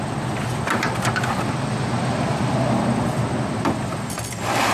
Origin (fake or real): real